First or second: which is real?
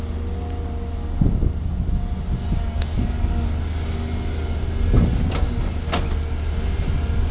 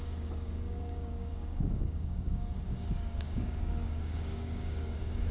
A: first